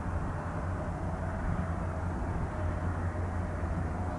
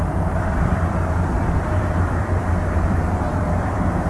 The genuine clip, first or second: first